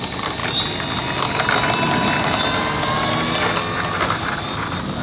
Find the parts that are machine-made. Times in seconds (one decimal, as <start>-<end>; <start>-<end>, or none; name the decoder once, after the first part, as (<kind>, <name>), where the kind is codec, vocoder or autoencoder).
0.4-3.4 (vocoder, BigVGAN v2)